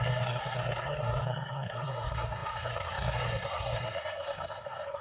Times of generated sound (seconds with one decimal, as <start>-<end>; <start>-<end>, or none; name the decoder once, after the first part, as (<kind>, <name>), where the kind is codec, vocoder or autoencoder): 0.0-5.0 (codec, SNAC)